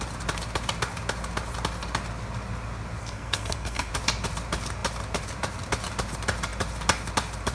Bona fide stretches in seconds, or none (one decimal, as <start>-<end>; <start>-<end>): 0.0-3.0; 3.9-7.5